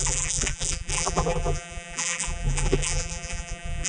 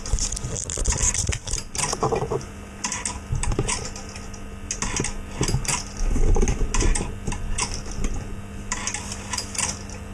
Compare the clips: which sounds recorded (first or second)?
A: second